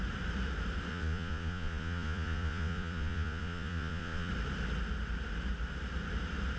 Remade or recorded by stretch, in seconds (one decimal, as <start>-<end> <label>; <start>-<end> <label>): 0.0-0.9 recorded; 0.9-4.3 remade; 4.3-6.6 recorded